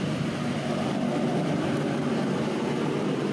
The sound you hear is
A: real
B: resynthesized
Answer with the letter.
A